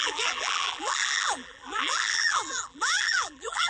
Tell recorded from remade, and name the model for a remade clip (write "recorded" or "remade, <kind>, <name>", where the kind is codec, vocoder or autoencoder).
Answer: remade, vocoder, BigVGAN v2